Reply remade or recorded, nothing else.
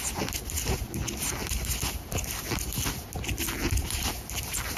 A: recorded